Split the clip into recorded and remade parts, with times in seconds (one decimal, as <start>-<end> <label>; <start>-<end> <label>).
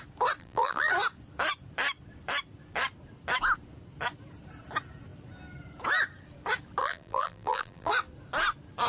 0.0-0.4 recorded; 0.4-0.9 remade; 0.9-6.8 recorded; 6.8-7.9 remade; 7.9-8.9 recorded